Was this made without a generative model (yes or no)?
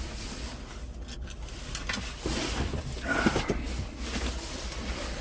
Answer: yes